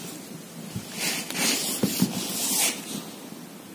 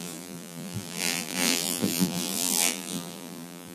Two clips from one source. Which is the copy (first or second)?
second